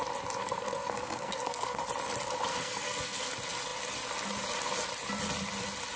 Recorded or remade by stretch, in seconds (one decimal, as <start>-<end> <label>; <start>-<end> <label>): 0.0-0.4 recorded; 0.4-1.8 remade; 1.8-2.5 recorded; 2.5-3.3 remade; 3.3-6.0 recorded